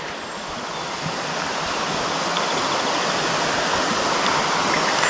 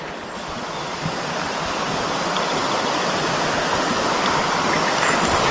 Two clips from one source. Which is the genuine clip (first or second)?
first